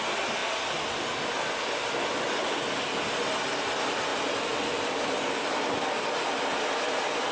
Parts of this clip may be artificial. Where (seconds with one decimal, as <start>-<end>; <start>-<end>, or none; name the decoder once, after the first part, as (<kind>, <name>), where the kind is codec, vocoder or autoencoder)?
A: none

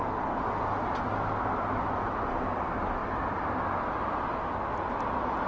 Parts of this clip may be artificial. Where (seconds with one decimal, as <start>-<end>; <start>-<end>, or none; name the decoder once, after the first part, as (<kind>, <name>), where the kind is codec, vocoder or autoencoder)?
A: none

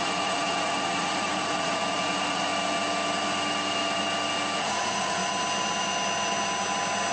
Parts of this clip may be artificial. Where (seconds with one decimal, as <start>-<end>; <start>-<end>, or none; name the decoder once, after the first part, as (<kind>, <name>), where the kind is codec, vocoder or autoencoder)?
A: 0.0-2.5 (vocoder, Vocos); 4.6-5.2